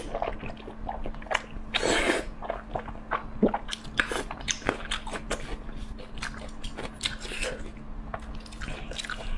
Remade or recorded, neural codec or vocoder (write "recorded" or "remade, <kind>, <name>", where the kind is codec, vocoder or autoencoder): recorded